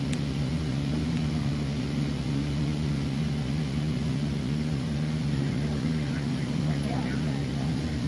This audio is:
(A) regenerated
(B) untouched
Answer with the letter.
A